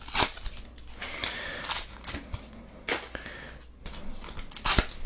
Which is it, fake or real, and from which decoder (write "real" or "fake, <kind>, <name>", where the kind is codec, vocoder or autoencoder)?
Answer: real